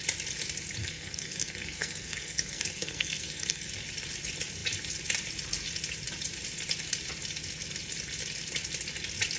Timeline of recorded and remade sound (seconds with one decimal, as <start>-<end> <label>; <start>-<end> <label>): 0.0-0.8 recorded; 0.8-3.7 remade; 3.7-9.4 recorded